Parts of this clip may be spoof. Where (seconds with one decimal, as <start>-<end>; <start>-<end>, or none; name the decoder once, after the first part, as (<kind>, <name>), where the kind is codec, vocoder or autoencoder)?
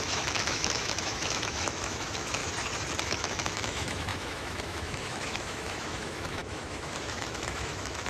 0.0-2.4 (autoencoder, DAC-VAE); 3.0-8.1